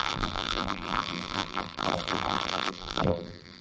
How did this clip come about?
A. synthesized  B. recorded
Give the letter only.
A